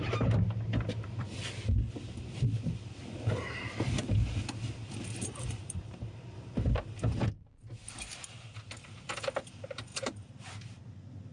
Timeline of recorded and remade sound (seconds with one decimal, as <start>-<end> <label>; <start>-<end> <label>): 0.0-4.8 recorded; 4.8-6.1 remade; 6.1-7.8 recorded; 7.8-8.6 remade; 8.6-9.9 recorded; 9.9-10.7 remade; 10.7-11.3 recorded